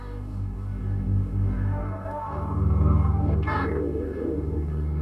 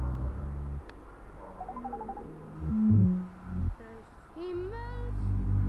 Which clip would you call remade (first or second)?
first